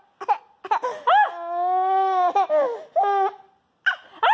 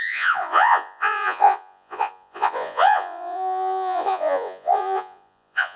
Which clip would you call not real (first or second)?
second